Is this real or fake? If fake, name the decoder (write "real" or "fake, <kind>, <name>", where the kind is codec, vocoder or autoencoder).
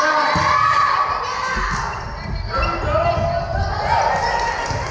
real